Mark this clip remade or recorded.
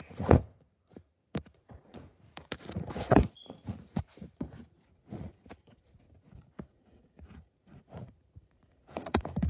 remade